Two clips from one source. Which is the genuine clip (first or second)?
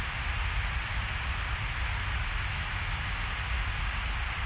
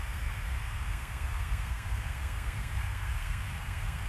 first